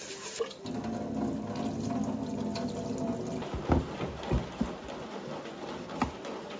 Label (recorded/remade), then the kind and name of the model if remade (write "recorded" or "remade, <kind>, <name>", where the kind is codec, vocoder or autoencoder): recorded